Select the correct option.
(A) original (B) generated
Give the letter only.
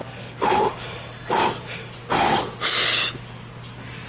A